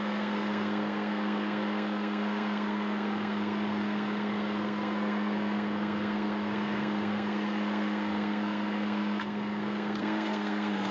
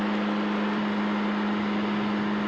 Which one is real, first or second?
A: second